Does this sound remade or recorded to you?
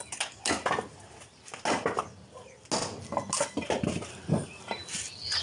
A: recorded